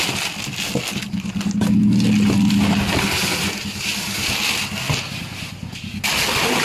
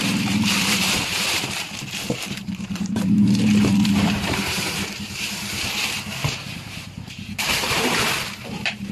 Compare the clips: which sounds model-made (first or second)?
second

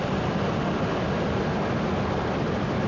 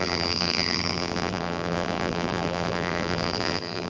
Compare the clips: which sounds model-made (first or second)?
second